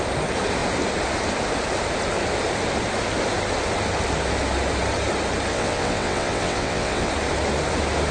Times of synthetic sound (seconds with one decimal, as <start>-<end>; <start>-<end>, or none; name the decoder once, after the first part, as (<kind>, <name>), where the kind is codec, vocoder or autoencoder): 5.5-7.1 (vocoder, WaveNeXt)